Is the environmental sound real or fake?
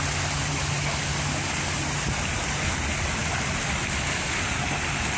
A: real